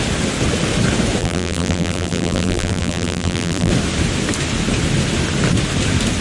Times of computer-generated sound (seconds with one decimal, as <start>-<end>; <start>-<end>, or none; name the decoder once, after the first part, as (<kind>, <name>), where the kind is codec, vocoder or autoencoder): 1.2-3.7 (vocoder, BigVGAN v2)